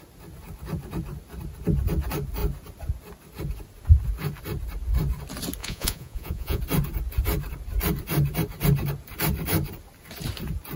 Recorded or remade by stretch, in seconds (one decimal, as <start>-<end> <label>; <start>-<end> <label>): 0.0-5.6 recorded; 5.6-6.6 remade; 6.6-10.8 recorded